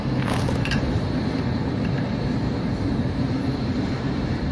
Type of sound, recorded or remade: remade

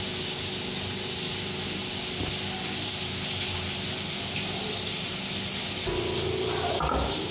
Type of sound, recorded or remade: recorded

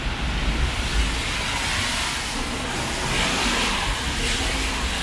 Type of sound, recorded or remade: recorded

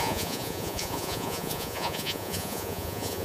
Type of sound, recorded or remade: remade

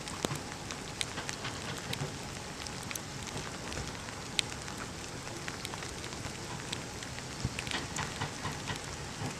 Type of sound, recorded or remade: recorded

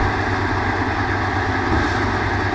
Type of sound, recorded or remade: recorded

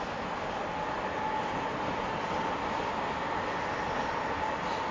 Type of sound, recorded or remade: recorded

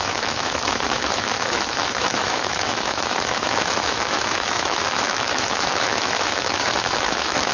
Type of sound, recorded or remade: remade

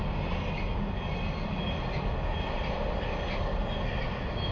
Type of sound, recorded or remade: recorded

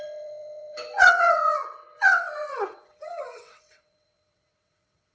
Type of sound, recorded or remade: remade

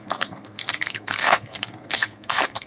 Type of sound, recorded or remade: remade